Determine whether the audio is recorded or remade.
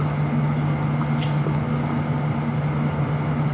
recorded